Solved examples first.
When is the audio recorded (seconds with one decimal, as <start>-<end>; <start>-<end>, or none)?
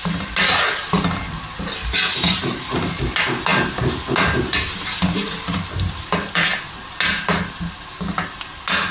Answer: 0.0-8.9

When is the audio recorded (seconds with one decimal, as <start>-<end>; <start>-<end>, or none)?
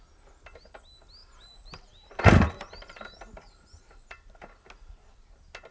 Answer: 0.0-1.2; 4.6-5.7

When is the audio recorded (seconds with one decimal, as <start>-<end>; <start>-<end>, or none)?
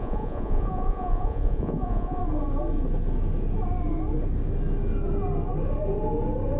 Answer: 2.2-6.6